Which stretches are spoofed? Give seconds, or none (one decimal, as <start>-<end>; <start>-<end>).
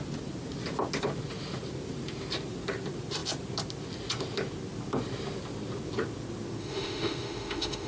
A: 6.6-7.9